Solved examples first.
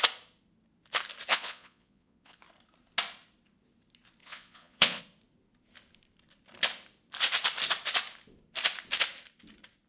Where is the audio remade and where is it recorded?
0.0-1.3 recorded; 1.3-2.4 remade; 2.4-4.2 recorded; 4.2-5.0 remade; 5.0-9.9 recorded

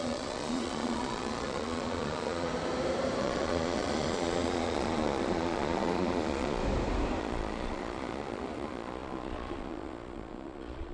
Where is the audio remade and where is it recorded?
0.0-2.5 remade; 2.5-3.2 recorded; 3.2-6.6 remade; 6.6-7.2 recorded; 7.2-10.9 remade

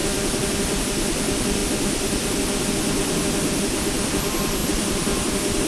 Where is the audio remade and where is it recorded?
0.0-5.7 recorded

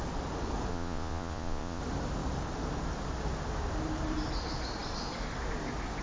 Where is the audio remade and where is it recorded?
0.0-0.7 recorded; 0.7-1.8 remade; 1.8-6.0 recorded

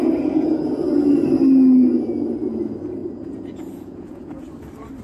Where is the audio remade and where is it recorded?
0.0-0.6 remade; 0.6-3.0 recorded; 3.0-4.5 remade; 4.5-5.0 recorded